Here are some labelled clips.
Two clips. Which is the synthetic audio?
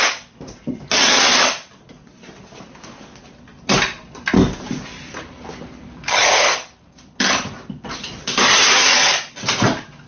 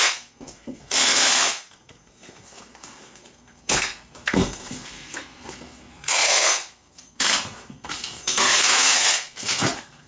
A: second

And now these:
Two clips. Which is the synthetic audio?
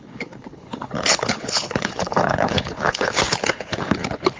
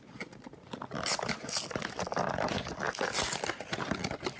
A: first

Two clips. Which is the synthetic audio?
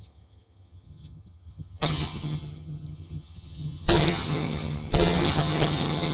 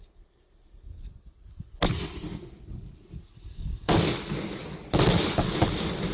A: first